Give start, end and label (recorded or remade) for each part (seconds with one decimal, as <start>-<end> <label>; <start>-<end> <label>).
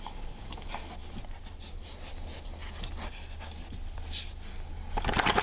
0.0-5.4 recorded